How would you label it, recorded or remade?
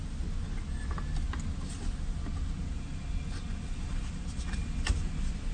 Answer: recorded